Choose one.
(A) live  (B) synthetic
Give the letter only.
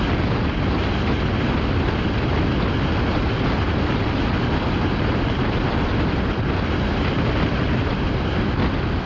A